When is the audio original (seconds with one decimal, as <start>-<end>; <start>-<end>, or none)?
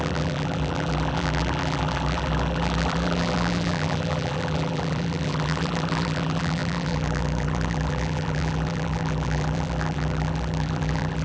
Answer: none